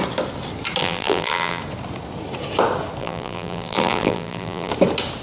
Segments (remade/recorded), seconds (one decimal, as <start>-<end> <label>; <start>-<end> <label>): 0.0-0.8 recorded; 0.8-1.6 remade; 1.6-3.0 recorded; 3.0-4.7 remade; 4.7-5.2 recorded